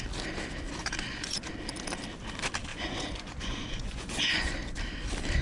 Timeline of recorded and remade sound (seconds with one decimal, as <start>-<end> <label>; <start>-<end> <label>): 0.0-0.8 recorded; 0.8-1.5 remade; 1.5-2.7 recorded; 2.7-4.5 remade; 4.5-5.4 recorded

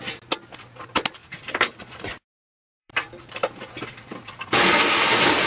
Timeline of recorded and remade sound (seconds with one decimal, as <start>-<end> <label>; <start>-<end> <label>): 0.0-1.2 recorded; 1.2-1.8 remade; 1.8-2.8 recorded; 2.8-4.8 remade; 4.8-5.5 recorded

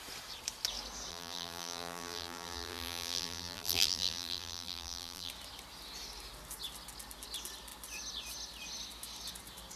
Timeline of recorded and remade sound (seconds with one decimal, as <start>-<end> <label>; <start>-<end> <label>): 0.0-1.1 recorded; 1.1-5.3 remade; 5.3-9.8 recorded

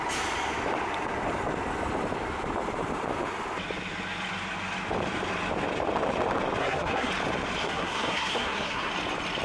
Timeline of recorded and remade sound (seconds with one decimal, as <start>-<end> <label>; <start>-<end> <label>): 0.0-6.6 recorded; 6.6-7.1 remade; 7.1-7.6 recorded; 7.6-8.9 remade; 8.9-9.4 recorded

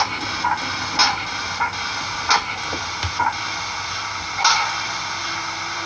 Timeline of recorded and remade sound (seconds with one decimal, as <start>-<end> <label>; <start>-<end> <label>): 0.0-5.9 recorded

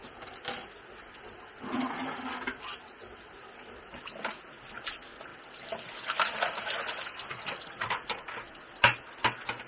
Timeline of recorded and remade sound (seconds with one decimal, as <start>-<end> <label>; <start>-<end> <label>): 0.0-5.3 recorded; 5.3-8.3 remade; 8.3-9.7 recorded

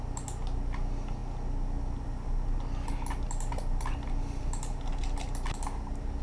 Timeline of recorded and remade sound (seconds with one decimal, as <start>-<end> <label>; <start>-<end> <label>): 0.0-6.2 recorded

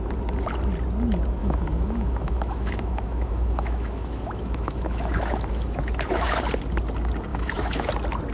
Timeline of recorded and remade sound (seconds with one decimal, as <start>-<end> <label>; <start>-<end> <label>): 0.0-1.4 recorded; 1.4-6.4 remade; 6.4-7.3 recorded; 7.3-7.9 remade; 7.9-8.3 recorded